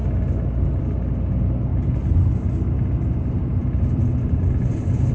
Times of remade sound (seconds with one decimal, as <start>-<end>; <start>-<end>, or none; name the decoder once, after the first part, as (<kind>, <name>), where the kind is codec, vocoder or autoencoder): none